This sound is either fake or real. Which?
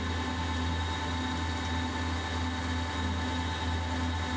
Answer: real